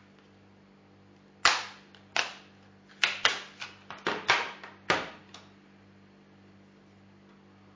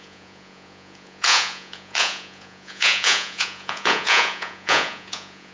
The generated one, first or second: second